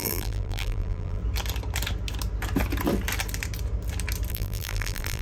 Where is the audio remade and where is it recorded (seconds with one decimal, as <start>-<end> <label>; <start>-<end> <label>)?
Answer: 0.0-1.2 remade; 1.2-4.3 recorded; 4.3-5.2 remade